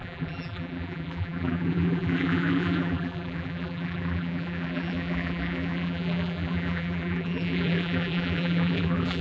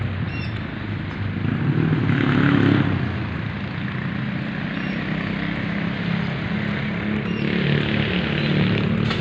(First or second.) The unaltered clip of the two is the second